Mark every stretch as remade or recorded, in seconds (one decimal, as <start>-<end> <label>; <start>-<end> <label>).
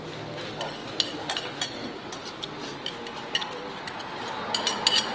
0.0-5.1 recorded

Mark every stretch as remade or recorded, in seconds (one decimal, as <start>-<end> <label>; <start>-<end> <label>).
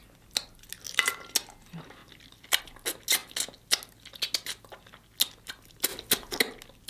0.0-2.0 recorded; 2.0-2.6 remade; 2.6-5.9 recorded; 5.9-6.4 remade; 6.4-6.9 recorded